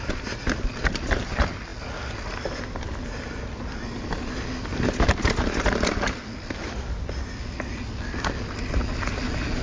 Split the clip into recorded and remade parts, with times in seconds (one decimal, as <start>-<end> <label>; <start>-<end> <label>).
0.0-9.6 recorded